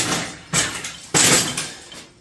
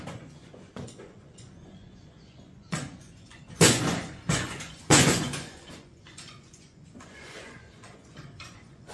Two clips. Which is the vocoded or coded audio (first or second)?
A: second